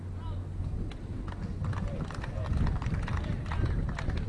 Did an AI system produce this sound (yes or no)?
no